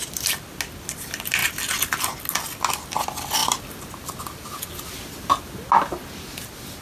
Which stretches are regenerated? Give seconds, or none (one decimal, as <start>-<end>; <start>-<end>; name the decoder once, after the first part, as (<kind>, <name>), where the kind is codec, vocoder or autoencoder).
none